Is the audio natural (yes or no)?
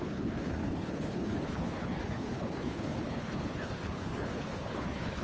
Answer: no